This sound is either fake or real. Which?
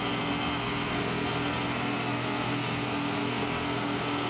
fake